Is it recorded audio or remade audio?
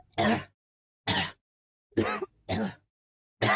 recorded